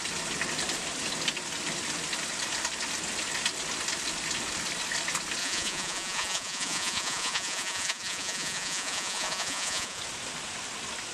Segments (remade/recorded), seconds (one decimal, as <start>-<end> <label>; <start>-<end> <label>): 0.0-5.4 recorded; 5.4-10.0 remade; 10.0-11.1 recorded